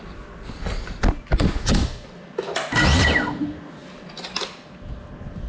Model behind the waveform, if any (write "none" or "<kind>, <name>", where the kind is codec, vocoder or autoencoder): none